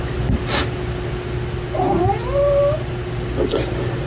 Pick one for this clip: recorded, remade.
recorded